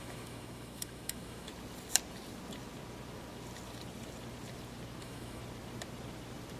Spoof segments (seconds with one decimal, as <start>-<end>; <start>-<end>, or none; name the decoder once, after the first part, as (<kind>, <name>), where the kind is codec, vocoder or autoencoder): 0.0-1.5 (autoencoder, DAC-VAE); 5.0-5.4